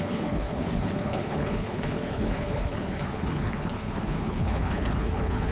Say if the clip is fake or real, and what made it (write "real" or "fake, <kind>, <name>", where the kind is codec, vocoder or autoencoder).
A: fake, codec, HILCodec